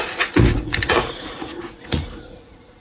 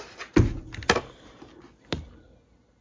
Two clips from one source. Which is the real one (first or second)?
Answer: second